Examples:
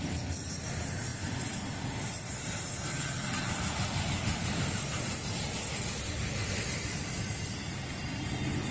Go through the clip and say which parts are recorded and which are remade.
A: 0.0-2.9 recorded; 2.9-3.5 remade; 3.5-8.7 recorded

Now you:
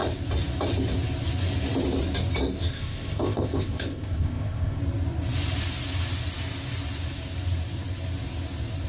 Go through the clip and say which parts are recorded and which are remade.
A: 0.0-2.7 recorded; 2.7-4.8 remade; 4.8-8.9 recorded